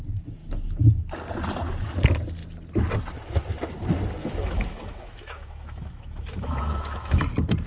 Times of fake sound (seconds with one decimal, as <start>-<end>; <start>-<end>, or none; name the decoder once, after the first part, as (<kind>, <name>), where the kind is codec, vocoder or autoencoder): 4.2-7.2 (autoencoder, DAC-VAE)